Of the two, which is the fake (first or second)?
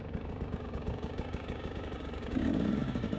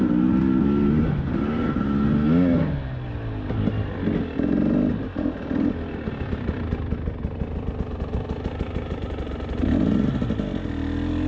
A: first